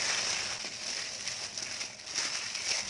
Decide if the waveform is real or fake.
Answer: real